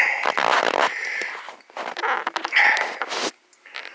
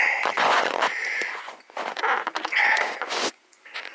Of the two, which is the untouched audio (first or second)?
first